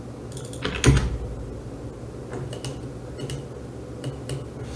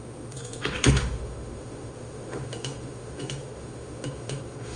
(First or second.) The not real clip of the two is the second